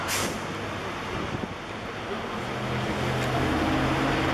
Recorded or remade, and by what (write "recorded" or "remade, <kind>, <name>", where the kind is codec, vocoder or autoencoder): recorded